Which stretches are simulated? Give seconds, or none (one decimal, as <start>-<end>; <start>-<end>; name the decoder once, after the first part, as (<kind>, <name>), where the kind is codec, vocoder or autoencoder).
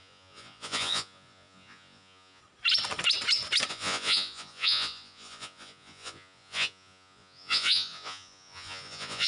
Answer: 0.0-2.4 (vocoder, Vocos); 3.7-9.3